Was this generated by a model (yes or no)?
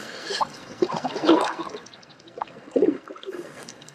yes